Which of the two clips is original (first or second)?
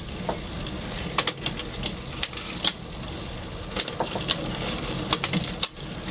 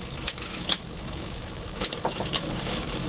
first